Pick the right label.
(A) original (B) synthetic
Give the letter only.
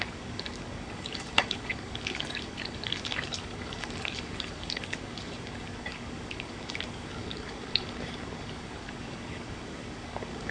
B